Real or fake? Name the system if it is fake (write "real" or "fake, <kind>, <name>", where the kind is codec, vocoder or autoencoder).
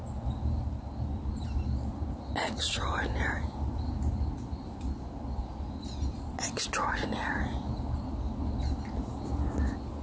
real